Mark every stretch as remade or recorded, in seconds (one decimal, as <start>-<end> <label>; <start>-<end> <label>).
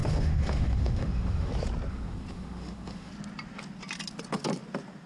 0.0-1.5 remade; 1.5-1.9 recorded; 1.9-3.1 remade; 3.1-5.1 recorded